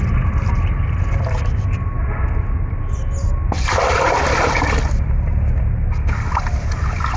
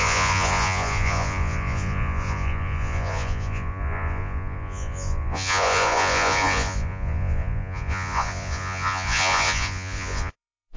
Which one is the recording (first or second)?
first